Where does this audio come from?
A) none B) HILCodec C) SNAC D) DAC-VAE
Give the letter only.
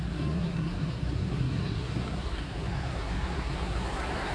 C